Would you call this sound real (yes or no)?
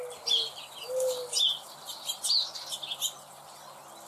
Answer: yes